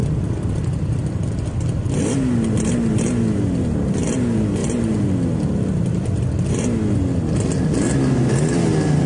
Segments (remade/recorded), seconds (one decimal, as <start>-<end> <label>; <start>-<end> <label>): 0.0-1.4 remade; 1.4-9.1 recorded